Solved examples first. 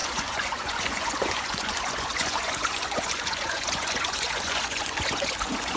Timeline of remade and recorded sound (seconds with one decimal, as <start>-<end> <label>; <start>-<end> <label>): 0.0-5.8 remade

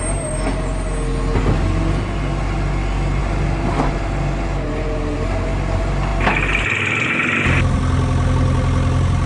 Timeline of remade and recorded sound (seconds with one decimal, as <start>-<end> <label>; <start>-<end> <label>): 0.0-9.3 recorded

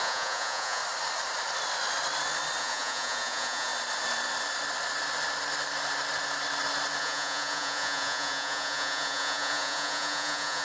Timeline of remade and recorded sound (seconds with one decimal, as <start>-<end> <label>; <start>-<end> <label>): 0.0-0.8 remade; 0.8-2.6 recorded; 2.6-3.7 remade; 3.7-7.0 recorded; 7.0-10.6 remade

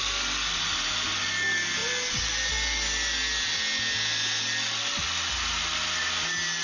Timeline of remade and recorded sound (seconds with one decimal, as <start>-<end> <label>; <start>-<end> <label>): 0.0-6.6 recorded

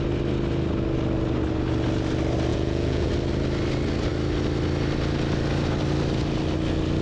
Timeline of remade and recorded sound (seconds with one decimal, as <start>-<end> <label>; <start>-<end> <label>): 0.0-2.5 recorded; 2.5-3.1 remade; 3.1-7.0 recorded

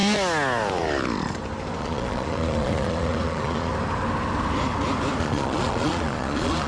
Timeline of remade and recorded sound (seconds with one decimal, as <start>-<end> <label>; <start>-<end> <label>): 0.0-1.8 recorded; 1.8-3.7 remade; 3.7-5.2 recorded; 5.2-6.7 remade

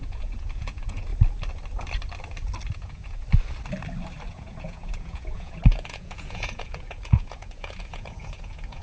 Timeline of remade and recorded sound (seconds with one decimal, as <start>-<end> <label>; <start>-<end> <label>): 0.0-1.1 remade; 1.1-2.7 recorded; 2.7-3.2 remade; 3.2-4.3 recorded; 4.3-8.8 remade

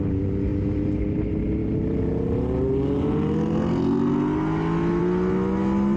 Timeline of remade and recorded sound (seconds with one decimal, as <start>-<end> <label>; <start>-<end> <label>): 0.0-6.0 recorded